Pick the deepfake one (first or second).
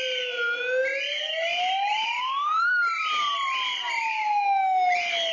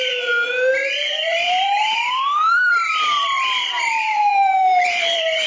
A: second